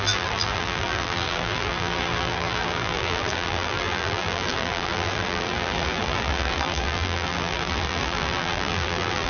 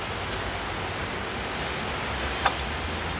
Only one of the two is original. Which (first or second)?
second